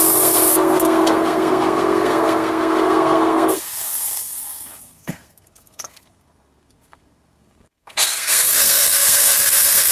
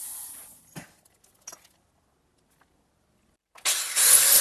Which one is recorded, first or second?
second